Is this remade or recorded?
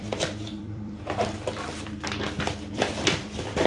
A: remade